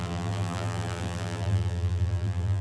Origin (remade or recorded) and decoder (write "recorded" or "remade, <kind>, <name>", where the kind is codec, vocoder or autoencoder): remade, vocoder, BigVGAN v2